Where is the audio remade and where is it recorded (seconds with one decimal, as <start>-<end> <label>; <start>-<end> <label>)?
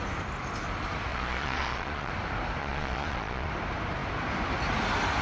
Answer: 0.0-1.1 recorded; 1.1-2.1 remade; 2.1-2.6 recorded; 2.6-3.5 remade; 3.5-5.2 recorded